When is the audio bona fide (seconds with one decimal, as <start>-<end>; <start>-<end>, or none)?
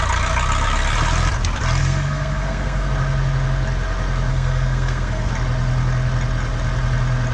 0.0-1.8; 2.9-4.3; 5.3-7.3